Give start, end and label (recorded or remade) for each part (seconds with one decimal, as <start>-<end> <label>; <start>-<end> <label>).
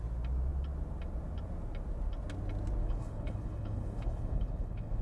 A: 0.0-2.8 recorded; 2.8-5.0 remade